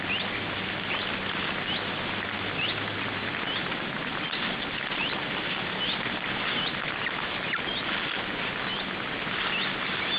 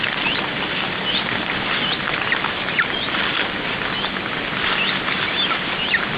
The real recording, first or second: first